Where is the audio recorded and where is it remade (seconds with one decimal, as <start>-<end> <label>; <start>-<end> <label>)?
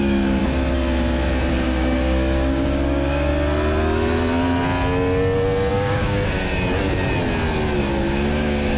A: 0.0-0.4 remade; 0.4-1.5 recorded; 1.5-3.3 remade; 3.3-5.7 recorded; 5.7-6.5 remade; 6.5-7.8 recorded; 7.8-8.8 remade